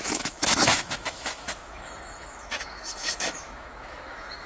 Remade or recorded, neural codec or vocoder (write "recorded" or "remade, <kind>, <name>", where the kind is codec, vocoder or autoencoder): remade, autoencoder, DAC-VAE